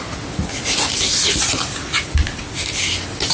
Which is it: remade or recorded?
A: recorded